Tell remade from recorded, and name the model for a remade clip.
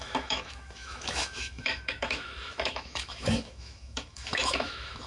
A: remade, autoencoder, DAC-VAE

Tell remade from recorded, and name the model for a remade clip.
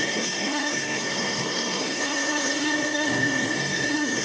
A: remade, codec, SNAC